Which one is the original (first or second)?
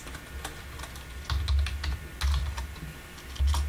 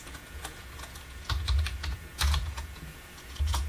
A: first